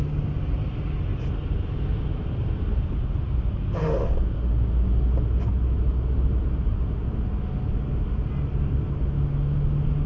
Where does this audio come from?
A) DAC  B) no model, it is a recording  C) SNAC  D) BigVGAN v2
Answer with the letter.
B